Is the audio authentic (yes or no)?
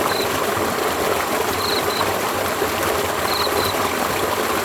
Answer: yes